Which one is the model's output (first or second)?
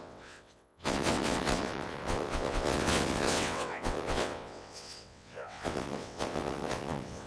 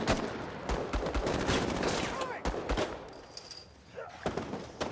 first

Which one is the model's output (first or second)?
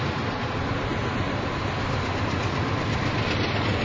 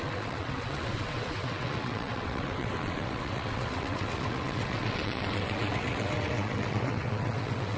second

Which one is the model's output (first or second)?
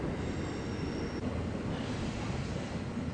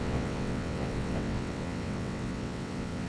second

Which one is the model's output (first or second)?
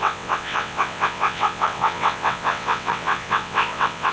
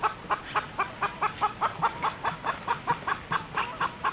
first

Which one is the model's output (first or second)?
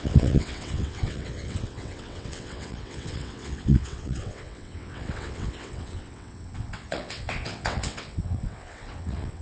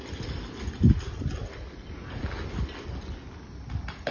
first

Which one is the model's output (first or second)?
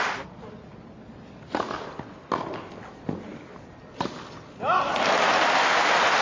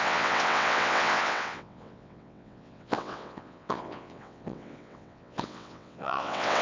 second